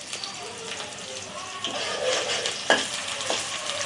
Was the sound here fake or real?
real